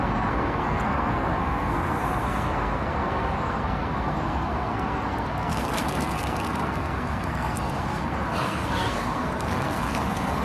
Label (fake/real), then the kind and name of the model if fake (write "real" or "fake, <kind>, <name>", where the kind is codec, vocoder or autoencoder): fake, codec, SNAC